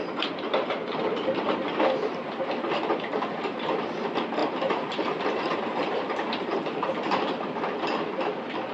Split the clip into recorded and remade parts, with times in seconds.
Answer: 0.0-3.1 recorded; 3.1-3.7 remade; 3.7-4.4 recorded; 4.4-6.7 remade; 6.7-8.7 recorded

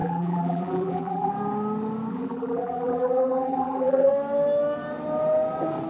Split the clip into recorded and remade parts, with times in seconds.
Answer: 0.0-1.3 remade; 1.3-2.1 recorded; 2.1-4.1 remade; 4.1-5.9 recorded

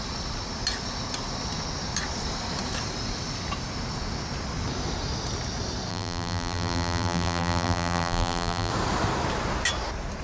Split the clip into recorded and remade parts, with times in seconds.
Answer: 0.0-5.9 recorded; 5.9-8.7 remade; 8.7-10.2 recorded

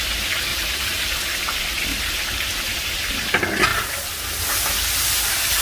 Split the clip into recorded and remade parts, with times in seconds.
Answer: 0.0-0.5 recorded; 0.5-1.4 remade; 1.4-1.9 recorded; 1.9-3.1 remade; 3.1-5.6 recorded

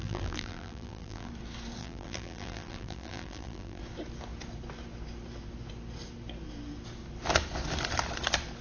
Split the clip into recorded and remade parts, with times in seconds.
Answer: 0.0-1.3 remade; 1.3-1.8 recorded; 1.8-3.8 remade; 3.8-8.6 recorded